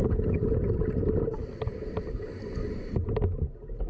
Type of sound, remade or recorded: recorded